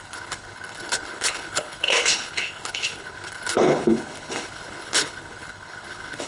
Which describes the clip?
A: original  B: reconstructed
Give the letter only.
B